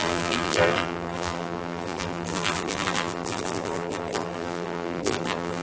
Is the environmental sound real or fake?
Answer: fake